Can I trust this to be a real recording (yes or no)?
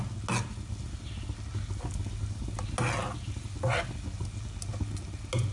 yes